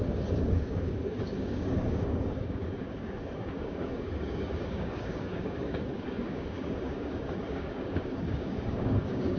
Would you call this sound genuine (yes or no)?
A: no